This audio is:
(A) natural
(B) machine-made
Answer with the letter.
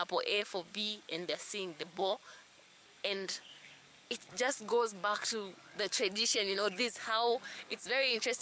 B